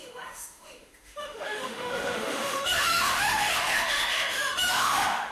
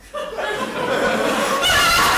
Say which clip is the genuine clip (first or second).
second